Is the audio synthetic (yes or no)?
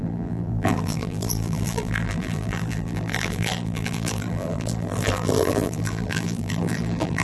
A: yes